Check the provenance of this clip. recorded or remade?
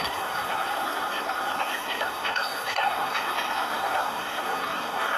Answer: remade